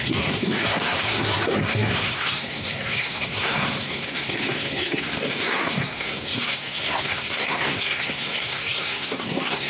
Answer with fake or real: fake